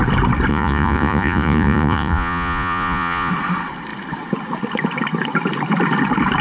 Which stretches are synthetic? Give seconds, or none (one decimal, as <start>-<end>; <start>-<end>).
0.5-3.3